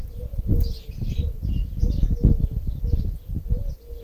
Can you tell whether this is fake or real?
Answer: real